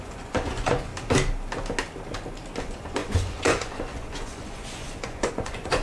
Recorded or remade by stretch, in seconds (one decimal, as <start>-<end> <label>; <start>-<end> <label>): 0.0-0.9 remade; 0.9-2.6 recorded; 2.6-5.8 remade